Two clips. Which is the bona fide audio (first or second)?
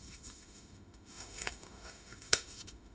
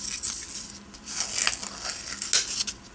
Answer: second